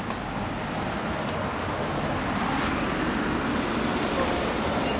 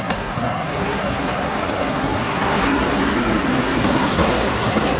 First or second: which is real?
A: first